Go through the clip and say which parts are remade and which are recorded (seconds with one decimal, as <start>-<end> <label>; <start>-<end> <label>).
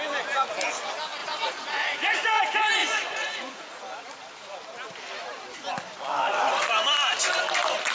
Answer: 0.0-1.2 recorded; 1.2-2.4 remade; 2.4-2.8 recorded; 2.8-3.8 remade; 3.8-7.9 recorded